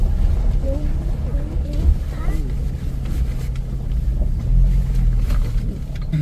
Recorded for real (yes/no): yes